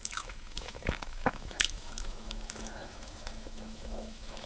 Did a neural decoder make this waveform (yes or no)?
yes